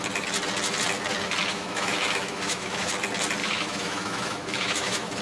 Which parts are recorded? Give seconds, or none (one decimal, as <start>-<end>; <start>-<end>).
0.0-1.5; 2.9-3.4